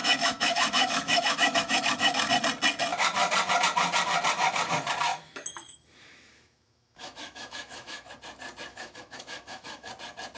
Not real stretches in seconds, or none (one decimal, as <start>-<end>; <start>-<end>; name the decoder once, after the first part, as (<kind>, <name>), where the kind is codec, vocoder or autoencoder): 0.0-2.3 (autoencoder, DAC-VAE); 5.1-8.1; 8.7-9.9

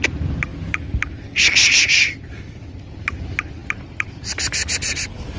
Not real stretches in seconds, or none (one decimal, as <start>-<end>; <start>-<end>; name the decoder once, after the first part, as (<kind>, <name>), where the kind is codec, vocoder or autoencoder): none

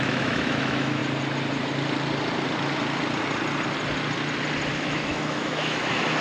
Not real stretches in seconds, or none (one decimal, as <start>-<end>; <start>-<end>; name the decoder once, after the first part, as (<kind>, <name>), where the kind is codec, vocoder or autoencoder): 0.0-1.0 (autoencoder, DAC-VAE); 4.7-6.2

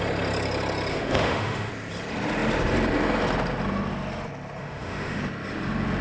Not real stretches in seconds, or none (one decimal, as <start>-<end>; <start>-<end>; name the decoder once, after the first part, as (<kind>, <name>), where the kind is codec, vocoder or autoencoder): 0.9-1.7 (autoencoder, DAC-VAE); 4.6-5.2

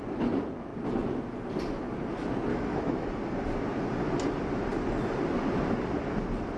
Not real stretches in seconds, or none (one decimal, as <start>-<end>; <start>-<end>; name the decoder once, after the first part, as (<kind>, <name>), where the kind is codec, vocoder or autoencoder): 2.5-3.1 (autoencoder, DAC-VAE)

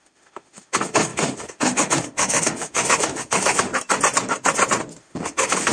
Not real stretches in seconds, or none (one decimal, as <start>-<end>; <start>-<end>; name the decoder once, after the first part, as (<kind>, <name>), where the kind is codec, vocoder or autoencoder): 0.0-3.7 (autoencoder, DAC-VAE); 5.0-5.7